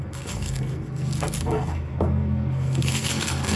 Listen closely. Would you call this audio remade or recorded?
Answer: remade